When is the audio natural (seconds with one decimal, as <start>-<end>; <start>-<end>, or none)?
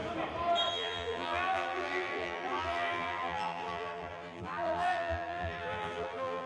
0.0-0.7